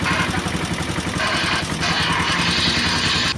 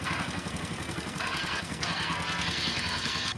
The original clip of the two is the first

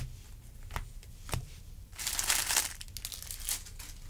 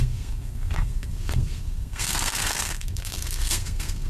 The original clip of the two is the first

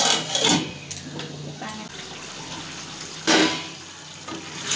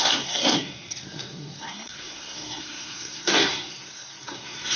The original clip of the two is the first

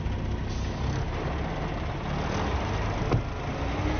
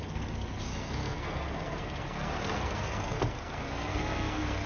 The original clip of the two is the first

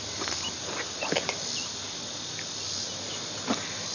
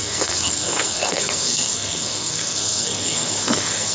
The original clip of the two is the first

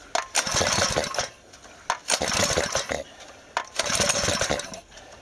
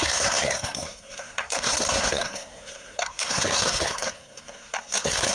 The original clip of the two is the first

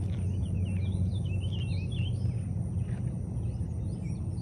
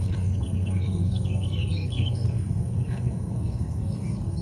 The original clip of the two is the first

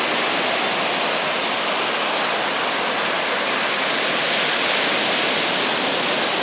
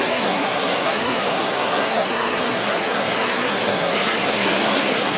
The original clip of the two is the first